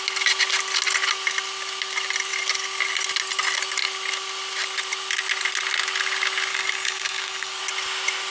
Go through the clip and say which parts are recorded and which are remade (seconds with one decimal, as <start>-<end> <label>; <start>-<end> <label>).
0.0-6.5 recorded; 6.5-7.6 remade; 7.6-8.3 recorded